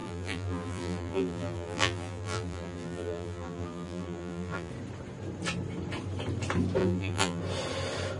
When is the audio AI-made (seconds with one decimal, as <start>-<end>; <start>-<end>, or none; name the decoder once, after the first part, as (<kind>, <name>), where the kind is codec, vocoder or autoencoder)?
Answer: 0.0-4.7 (vocoder, BigVGAN v2); 6.8-7.4